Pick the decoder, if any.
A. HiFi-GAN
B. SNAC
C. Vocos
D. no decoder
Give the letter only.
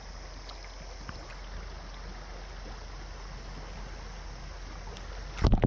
D